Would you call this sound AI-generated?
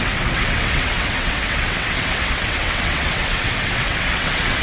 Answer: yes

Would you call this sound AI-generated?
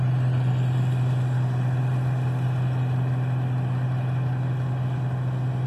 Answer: no